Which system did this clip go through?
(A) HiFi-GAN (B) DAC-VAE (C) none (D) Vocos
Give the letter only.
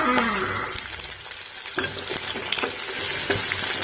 C